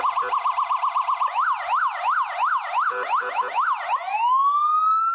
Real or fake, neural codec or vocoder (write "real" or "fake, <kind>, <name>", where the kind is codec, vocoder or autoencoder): real